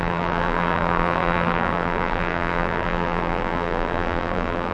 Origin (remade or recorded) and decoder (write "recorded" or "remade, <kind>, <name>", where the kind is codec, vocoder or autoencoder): remade, vocoder, BigVGAN v2